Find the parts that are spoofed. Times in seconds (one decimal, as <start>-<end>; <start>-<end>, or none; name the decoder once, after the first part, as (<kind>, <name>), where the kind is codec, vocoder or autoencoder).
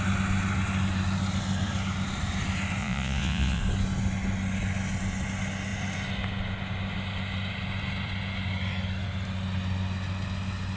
2.8-3.6 (vocoder, Vocos)